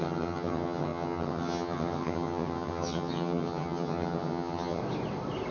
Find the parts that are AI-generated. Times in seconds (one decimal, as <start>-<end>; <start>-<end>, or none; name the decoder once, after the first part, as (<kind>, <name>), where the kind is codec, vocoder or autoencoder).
0.0-4.8 (vocoder, HiFi-GAN)